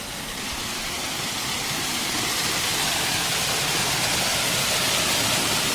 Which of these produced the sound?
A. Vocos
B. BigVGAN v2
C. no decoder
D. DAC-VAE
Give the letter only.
C